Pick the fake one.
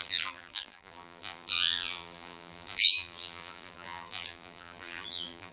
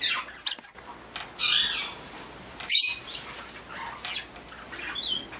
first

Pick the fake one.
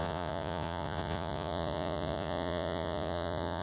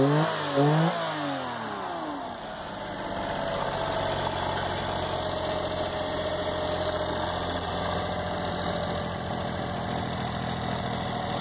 first